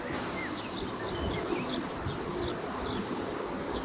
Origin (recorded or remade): recorded